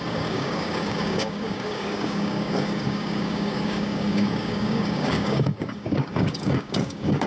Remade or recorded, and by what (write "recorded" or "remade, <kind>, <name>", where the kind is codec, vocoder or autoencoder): remade, codec, DAC